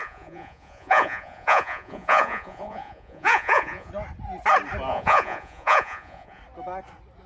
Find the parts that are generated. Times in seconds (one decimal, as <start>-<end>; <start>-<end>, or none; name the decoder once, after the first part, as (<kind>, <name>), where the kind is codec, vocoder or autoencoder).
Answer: 0.0-3.9 (vocoder, Vocos); 4.9-6.4